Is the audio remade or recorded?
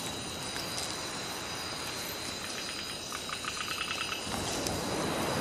recorded